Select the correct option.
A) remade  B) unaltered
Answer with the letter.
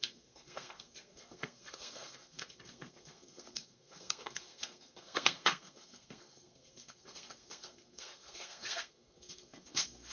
A